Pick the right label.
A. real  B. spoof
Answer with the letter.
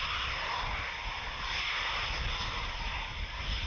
A